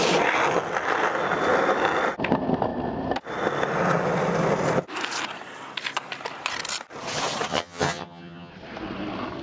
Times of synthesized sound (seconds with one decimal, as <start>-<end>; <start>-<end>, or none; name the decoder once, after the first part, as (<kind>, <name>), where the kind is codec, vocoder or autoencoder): 7.5-8.5 (vocoder, HiFi-GAN)